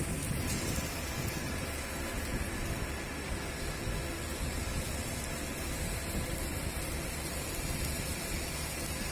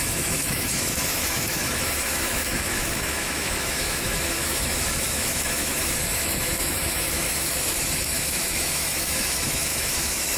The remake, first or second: second